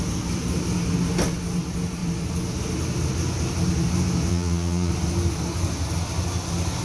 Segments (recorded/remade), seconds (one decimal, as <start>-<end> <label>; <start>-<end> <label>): 0.0-4.3 recorded; 4.3-4.9 remade; 4.9-6.8 recorded